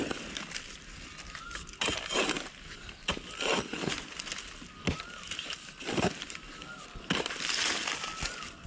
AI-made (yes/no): no